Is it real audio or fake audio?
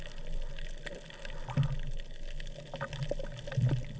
real